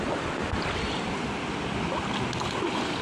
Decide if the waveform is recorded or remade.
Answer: recorded